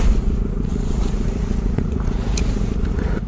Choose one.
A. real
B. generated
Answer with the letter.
B